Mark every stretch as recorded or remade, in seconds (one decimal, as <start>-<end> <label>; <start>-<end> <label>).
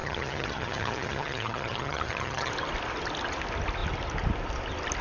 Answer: 0.0-2.5 remade; 2.5-5.0 recorded